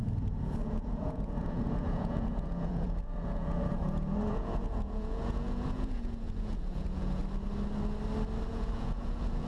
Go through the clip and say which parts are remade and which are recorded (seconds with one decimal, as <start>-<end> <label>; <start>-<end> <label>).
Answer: 0.0-7.2 remade; 7.2-8.5 recorded; 8.5-9.5 remade

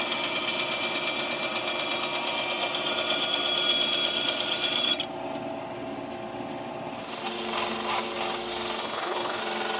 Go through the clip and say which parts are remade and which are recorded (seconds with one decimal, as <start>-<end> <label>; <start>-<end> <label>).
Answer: 0.0-8.8 recorded; 8.8-9.4 remade; 9.4-9.8 recorded

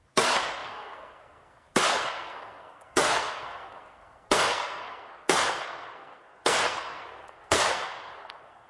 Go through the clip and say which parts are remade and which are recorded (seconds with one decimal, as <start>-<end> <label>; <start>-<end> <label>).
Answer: 0.0-8.7 remade